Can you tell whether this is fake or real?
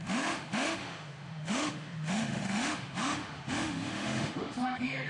fake